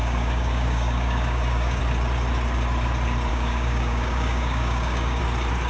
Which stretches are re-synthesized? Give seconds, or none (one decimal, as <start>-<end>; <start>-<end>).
0.0-1.8; 3.3-5.2